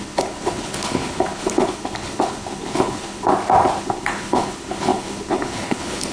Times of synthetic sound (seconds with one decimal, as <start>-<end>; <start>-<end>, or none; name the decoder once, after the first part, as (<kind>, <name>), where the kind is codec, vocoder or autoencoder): 0.0-3.3 (codec, HILCodec); 3.8-6.1